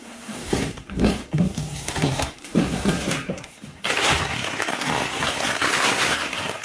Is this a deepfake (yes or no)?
yes